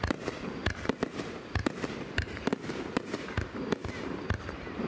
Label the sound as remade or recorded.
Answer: remade